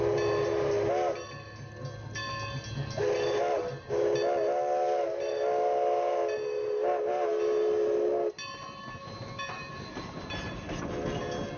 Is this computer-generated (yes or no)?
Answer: no